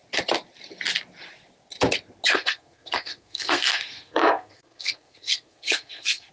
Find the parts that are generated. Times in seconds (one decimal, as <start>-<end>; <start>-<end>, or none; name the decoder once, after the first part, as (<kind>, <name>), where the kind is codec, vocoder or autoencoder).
2.3-6.3 (codec, SNAC)